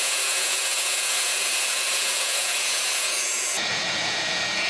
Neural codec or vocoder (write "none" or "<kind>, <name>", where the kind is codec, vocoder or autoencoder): vocoder, Vocos